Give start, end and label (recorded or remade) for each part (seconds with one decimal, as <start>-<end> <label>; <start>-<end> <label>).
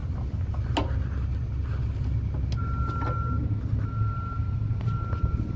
0.0-5.6 recorded